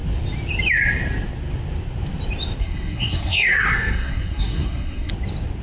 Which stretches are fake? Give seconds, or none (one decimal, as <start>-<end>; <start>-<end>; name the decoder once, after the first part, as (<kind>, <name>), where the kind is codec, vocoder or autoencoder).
2.6-5.1 (codec, SNAC)